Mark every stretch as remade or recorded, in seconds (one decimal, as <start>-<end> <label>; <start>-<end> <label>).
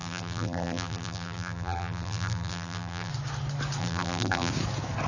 0.0-3.1 remade; 3.1-3.8 recorded; 3.8-4.5 remade; 4.5-5.1 recorded